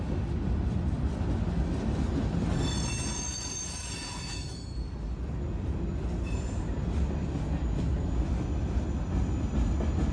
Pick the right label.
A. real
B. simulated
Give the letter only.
A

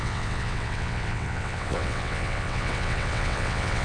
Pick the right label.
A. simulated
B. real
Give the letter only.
A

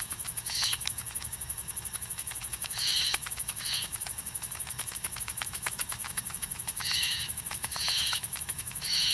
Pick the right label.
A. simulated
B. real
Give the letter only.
A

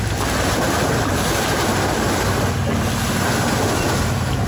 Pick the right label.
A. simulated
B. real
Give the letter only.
B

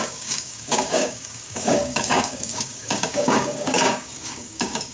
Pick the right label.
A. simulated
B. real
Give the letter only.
A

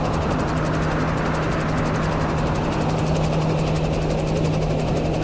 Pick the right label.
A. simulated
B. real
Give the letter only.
B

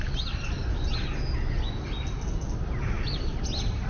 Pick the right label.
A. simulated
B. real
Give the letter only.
B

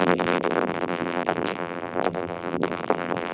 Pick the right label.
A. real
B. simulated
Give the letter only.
B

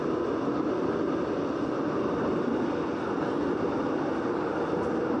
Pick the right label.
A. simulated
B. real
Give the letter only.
B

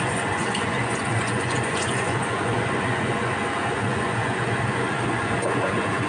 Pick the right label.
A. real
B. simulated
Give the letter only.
B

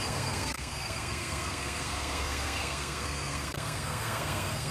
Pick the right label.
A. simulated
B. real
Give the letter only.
A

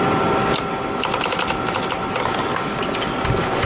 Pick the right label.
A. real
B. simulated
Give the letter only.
A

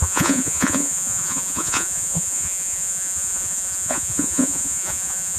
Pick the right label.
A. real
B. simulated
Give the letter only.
B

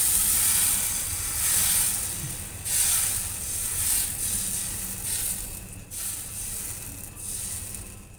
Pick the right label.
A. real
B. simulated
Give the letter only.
A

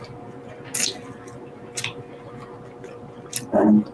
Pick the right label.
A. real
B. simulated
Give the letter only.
A